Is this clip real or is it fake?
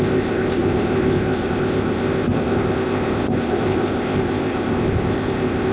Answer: fake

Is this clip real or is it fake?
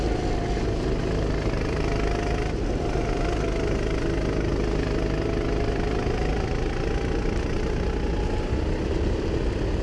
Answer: real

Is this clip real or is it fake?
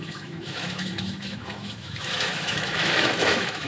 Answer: fake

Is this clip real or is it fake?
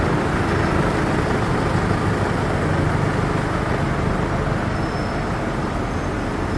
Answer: real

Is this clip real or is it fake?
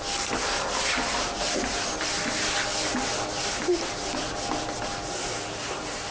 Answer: real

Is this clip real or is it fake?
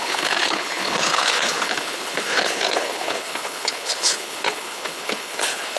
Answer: fake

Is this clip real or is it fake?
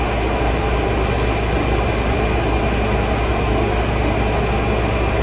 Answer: real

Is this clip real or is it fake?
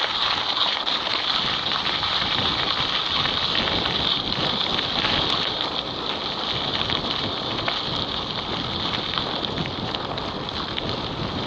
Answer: real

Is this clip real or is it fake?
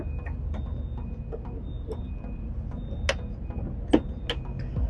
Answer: real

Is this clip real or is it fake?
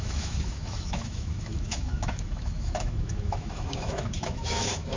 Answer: fake